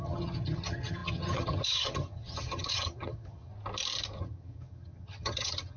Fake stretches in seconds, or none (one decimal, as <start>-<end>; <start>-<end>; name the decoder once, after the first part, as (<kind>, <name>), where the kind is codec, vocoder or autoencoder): 0.0-3.5 (vocoder, HiFi-GAN); 4.2-5.8